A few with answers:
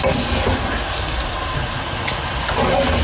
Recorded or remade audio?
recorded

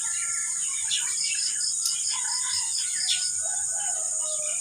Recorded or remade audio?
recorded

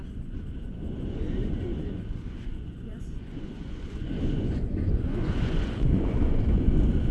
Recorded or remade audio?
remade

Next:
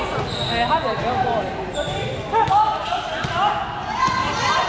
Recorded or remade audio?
recorded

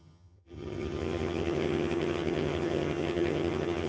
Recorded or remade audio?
remade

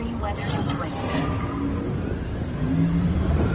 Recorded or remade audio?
recorded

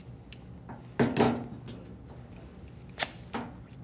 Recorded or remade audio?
recorded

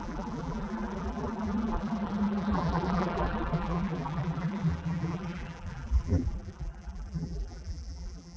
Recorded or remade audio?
remade